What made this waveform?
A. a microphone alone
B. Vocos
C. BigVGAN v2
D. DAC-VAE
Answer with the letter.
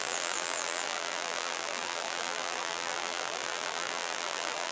C